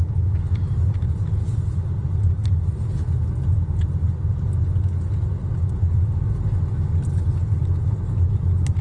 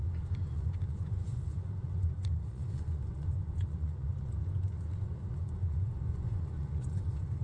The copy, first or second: second